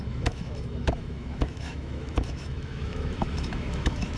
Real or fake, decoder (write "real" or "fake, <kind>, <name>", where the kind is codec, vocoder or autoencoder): fake, autoencoder, DAC-VAE